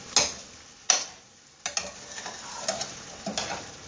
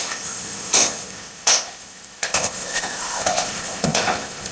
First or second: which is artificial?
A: second